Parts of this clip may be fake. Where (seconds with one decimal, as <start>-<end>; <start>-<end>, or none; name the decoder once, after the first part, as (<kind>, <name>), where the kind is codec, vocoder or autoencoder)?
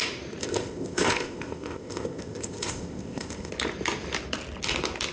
0.4-3.5 (codec, ZipCodec)